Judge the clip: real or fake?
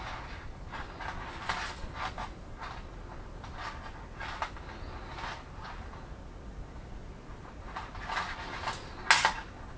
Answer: real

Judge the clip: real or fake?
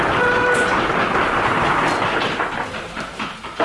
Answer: real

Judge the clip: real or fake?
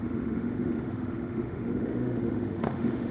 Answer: fake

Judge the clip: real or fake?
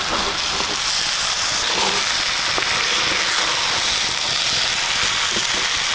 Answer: real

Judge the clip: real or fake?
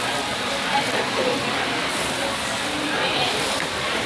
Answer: fake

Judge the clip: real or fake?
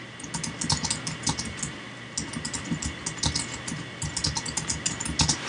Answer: real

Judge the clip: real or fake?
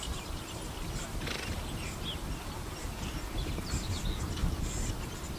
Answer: real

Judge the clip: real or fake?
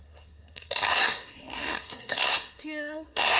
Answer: fake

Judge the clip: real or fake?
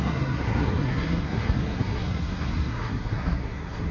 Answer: fake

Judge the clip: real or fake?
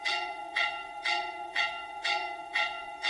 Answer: fake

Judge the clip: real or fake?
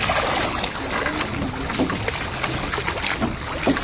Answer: real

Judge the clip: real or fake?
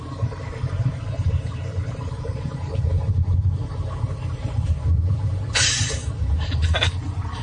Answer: fake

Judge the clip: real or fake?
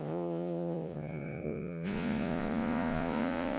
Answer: fake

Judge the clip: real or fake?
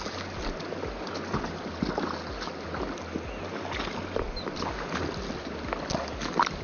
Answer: real